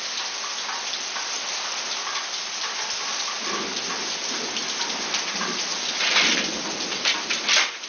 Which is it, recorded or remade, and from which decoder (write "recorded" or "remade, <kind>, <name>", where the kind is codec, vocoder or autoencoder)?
recorded